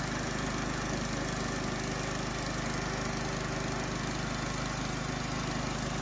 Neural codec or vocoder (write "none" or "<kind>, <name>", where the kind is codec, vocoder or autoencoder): none